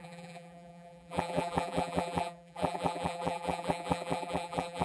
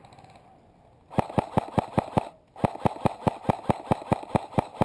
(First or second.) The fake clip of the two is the first